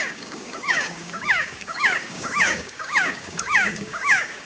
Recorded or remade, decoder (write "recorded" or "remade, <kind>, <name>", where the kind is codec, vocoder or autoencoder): remade, codec, DAC